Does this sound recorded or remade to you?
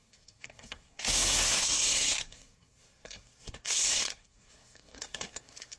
remade